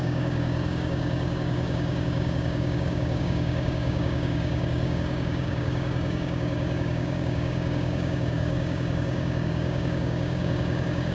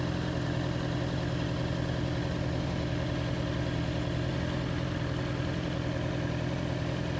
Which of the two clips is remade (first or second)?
first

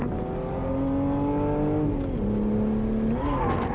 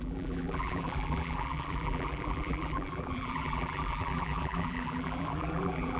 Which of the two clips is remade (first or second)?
second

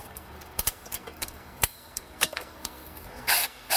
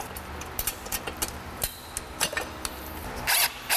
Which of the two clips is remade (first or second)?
first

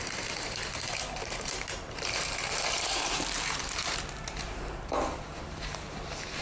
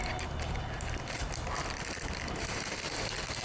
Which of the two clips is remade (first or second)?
first